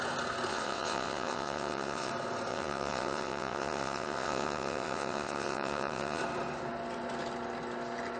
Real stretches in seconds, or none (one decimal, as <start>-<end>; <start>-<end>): 0.0-0.5; 2.1-2.5; 6.2-8.2